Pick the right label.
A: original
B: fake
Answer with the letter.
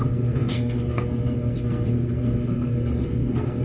B